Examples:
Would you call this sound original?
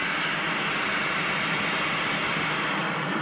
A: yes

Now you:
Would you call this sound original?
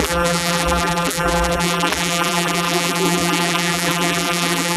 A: no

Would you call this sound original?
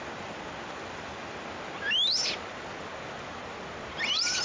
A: yes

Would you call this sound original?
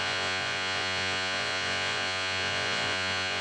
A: no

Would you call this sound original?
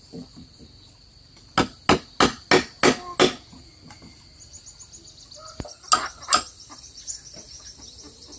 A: yes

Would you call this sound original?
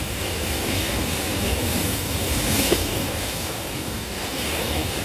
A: no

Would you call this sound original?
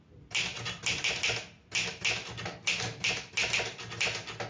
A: yes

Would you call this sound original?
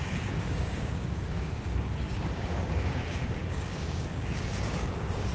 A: no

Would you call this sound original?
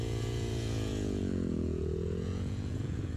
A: no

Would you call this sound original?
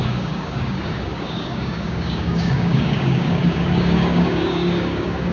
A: no